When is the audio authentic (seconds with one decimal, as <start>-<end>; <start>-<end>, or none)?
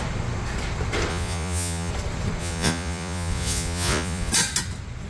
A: 0.0-1.1; 1.9-2.4; 4.3-5.1